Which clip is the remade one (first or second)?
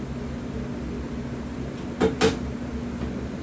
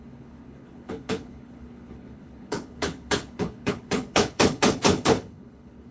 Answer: second